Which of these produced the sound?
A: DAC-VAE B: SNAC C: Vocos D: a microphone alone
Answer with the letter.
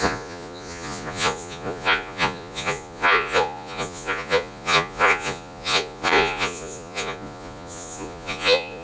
C